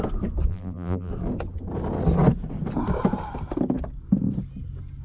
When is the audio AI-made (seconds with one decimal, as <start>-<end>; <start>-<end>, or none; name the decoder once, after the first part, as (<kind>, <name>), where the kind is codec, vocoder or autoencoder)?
0.5-1.1 (vocoder, BigVGAN v2)